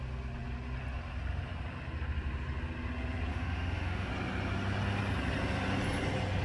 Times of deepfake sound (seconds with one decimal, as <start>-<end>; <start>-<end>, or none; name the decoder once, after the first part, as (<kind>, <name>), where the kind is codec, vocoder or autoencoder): 3.3-4.1 (autoencoder, DAC-VAE)